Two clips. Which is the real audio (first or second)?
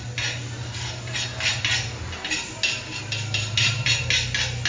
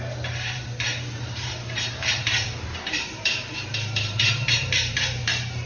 first